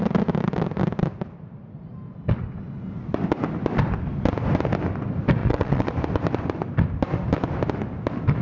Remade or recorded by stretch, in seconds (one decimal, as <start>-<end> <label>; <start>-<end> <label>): 0.0-5.4 recorded; 5.4-5.9 remade; 5.9-8.4 recorded